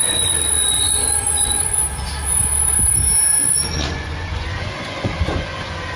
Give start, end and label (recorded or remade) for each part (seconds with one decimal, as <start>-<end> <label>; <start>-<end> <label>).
0.0-1.8 remade; 1.8-3.4 recorded; 3.4-6.0 remade